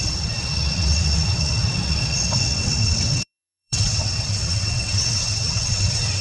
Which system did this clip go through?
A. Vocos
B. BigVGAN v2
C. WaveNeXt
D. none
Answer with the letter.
C